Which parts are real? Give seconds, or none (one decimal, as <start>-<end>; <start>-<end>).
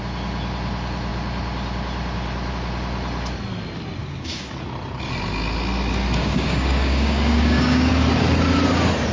0.0-4.0; 4.5-6.2; 7.9-9.1